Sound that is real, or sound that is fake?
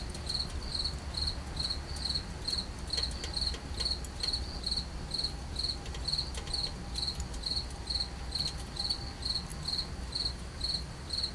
real